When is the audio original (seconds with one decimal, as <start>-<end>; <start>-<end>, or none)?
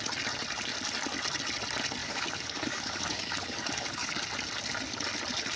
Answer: 0.0-2.0; 4.1-5.6